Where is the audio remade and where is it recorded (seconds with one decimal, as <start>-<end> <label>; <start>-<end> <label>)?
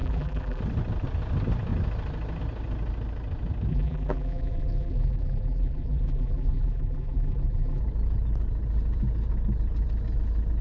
0.0-0.6 remade; 0.6-3.7 recorded; 3.7-7.8 remade; 7.8-10.6 recorded